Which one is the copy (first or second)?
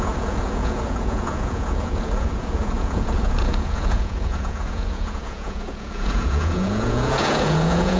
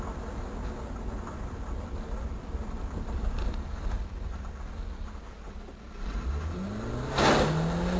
first